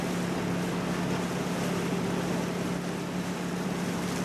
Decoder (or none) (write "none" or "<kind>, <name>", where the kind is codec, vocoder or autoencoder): none